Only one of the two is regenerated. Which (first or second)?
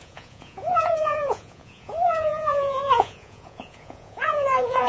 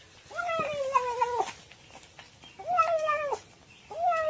first